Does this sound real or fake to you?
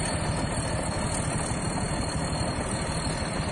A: real